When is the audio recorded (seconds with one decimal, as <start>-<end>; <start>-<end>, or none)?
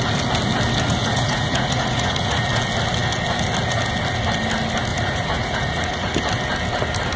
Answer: 0.0-1.0; 2.4-4.9; 6.2-7.2